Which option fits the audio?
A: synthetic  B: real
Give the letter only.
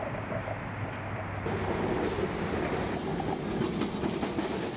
B